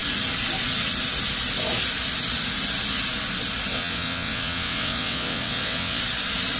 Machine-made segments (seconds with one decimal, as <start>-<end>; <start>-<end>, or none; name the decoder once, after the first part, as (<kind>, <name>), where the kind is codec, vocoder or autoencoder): 3.7-6.0 (vocoder, WaveNeXt)